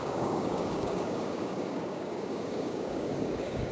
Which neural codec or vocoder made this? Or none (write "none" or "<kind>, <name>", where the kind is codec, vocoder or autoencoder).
codec, DAC